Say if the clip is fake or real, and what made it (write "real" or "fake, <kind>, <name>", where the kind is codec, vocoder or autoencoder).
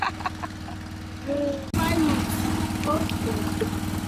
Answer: real